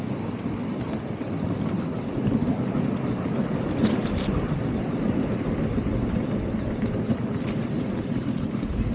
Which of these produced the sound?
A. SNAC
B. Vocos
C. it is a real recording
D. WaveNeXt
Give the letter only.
C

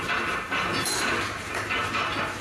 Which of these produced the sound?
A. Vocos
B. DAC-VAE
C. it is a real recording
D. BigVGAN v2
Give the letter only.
C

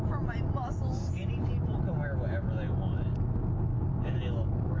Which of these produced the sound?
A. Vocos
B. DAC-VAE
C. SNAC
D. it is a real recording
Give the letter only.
D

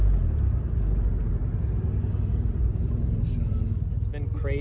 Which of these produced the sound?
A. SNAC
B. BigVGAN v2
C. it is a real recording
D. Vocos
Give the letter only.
C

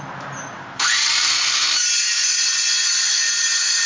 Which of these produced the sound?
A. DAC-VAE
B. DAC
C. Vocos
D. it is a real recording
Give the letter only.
D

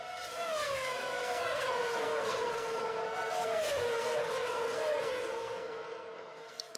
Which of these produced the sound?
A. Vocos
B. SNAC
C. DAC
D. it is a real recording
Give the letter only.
B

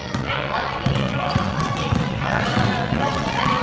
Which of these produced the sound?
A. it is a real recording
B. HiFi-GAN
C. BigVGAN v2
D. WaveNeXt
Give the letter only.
D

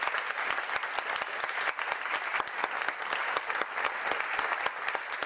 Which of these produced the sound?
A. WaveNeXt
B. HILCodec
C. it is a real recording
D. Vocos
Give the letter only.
C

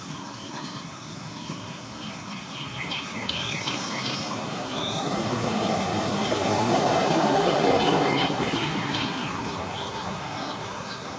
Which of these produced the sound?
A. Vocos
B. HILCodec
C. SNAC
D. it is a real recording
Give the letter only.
C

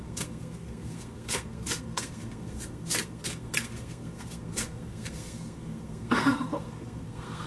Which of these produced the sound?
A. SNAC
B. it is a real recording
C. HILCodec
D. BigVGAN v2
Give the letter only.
A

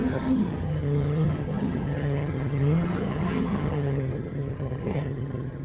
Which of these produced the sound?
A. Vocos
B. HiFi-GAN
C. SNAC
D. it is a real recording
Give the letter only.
B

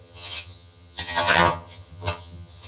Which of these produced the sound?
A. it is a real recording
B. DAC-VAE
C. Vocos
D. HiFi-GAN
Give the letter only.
D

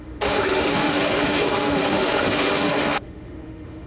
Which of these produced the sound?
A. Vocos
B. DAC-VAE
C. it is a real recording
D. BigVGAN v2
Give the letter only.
B